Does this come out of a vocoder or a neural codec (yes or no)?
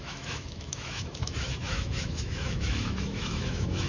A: yes